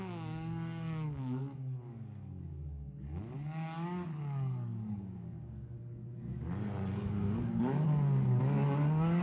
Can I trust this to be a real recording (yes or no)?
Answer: no